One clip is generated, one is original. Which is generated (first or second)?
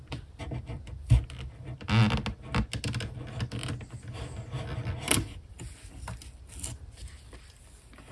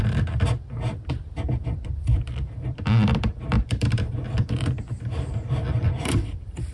second